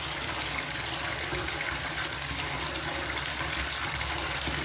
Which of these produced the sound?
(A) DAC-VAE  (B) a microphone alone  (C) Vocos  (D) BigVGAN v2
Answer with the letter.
B